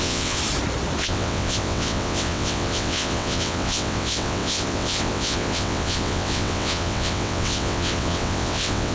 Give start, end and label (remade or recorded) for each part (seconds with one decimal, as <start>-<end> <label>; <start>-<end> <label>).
0.0-0.4 remade; 0.4-1.0 recorded; 1.0-8.9 remade